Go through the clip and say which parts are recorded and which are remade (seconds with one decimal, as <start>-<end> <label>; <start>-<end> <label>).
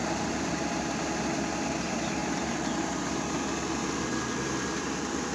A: 0.0-2.2 recorded; 2.2-3.7 remade; 3.7-5.3 recorded